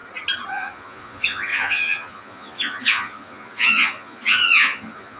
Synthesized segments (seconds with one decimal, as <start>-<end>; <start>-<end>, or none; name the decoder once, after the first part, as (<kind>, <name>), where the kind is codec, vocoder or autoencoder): 0.5-5.2 (vocoder, Vocos)